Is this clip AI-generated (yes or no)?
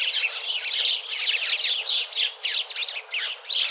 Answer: no